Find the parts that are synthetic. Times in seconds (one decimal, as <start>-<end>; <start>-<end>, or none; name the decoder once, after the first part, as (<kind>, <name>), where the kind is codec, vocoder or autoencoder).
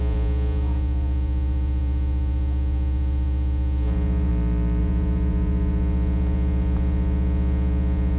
0.0-4.3 (vocoder, Vocos); 4.8-8.2